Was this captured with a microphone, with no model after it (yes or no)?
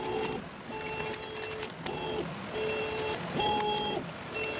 yes